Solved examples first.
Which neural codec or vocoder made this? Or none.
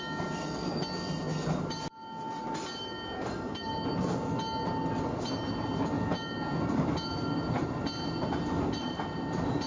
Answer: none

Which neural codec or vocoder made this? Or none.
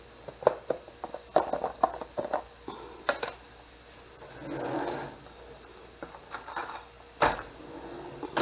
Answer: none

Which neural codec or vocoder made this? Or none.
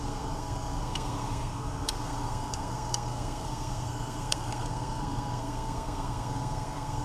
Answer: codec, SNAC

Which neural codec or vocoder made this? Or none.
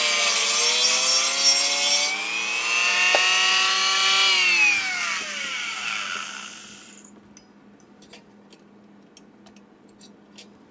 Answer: none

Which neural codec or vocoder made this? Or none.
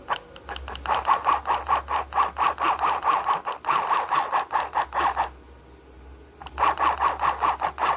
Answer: none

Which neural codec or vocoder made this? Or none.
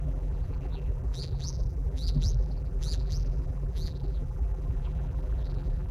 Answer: vocoder, BigVGAN v2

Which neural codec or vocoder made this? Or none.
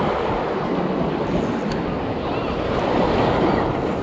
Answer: none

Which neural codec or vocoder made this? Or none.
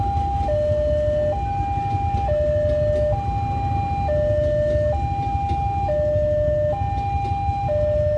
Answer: none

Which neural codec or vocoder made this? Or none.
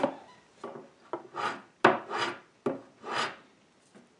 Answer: none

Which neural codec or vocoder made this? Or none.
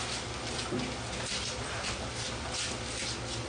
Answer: none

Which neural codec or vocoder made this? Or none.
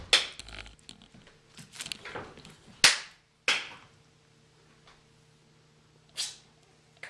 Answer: none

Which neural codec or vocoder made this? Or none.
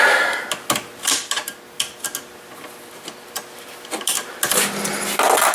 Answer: none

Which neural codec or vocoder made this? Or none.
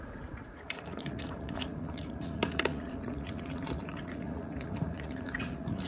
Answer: vocoder, Vocos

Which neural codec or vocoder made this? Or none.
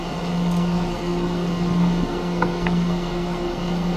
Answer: codec, SNAC